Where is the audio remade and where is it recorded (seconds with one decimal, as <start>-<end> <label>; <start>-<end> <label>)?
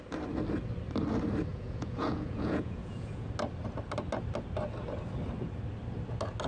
0.0-1.5 recorded; 1.5-3.3 remade; 3.3-6.5 recorded